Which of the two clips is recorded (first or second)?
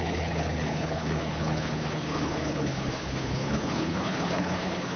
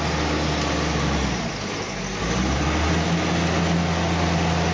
second